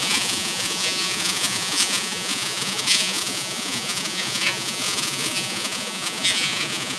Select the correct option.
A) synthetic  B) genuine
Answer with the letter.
A